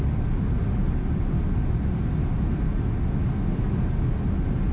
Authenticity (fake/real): real